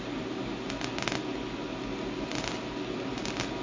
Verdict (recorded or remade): recorded